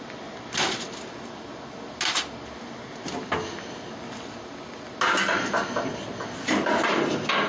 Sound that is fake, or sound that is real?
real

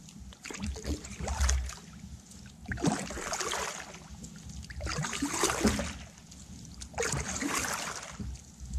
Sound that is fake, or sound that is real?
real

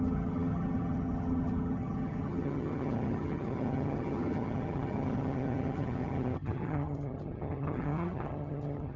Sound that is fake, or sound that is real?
fake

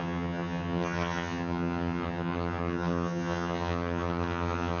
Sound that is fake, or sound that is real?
fake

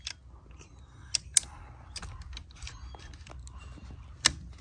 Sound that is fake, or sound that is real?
real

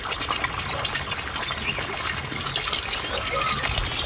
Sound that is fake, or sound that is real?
real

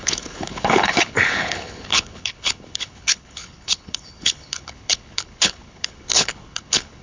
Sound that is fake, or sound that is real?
fake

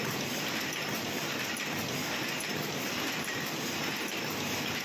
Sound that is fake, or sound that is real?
real